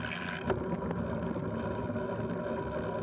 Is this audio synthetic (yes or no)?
no